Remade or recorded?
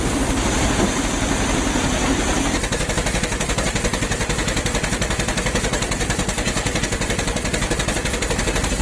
recorded